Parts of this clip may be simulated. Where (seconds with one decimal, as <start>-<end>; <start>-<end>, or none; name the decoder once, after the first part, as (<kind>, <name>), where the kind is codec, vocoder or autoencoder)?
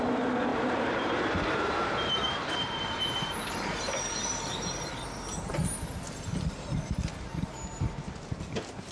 0.5-4.9 (vocoder, BigVGAN v2)